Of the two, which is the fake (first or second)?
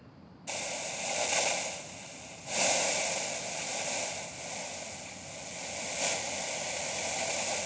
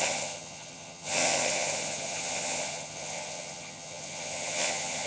second